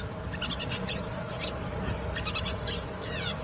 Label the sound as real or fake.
real